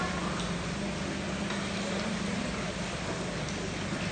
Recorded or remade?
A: recorded